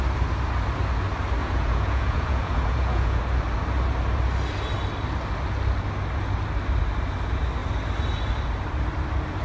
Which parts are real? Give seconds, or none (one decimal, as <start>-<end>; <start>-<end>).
0.0-1.4; 3.2-9.4